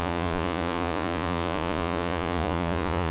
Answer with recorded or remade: remade